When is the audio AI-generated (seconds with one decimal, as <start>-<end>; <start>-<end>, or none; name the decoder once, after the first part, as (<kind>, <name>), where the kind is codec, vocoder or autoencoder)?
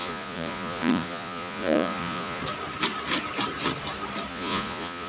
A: 0.0-2.4 (vocoder, Vocos); 4.3-5.1